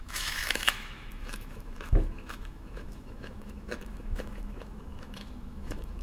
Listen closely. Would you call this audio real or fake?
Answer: fake